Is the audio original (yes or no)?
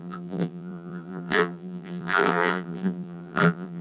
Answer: no